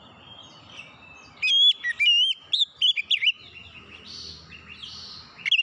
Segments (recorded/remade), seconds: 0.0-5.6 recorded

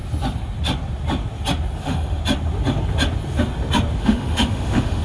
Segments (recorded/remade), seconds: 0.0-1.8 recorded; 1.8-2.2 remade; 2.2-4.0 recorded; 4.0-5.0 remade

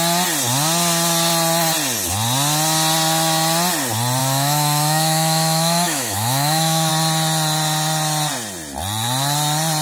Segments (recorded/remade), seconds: 0.0-4.2 recorded; 4.2-6.9 remade; 6.9-9.8 recorded

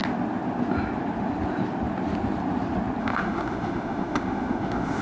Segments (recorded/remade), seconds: 0.0-3.0 recorded; 3.0-5.0 remade

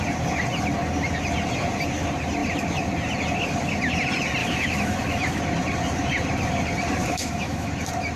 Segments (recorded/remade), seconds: 0.0-4.4 recorded; 4.4-5.4 remade; 5.4-7.0 recorded; 7.0-7.7 remade; 7.7-8.2 recorded

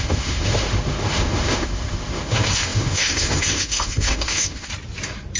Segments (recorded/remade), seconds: 0.0-4.7 remade; 4.7-5.4 recorded